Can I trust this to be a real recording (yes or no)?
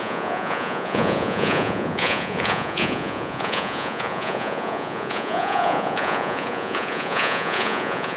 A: no